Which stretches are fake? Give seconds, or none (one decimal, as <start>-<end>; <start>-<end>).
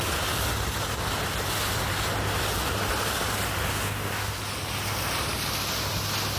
3.7-4.3